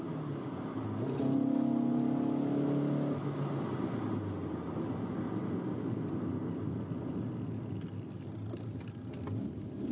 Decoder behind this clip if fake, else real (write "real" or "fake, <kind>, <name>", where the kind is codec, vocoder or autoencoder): real